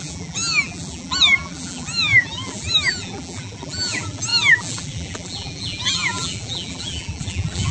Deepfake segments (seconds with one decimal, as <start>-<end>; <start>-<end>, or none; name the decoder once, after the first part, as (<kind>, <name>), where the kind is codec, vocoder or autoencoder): 0.0-7.7 (vocoder, BigVGAN v2)